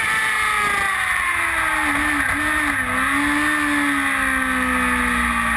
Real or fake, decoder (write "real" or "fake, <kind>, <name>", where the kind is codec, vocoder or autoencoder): real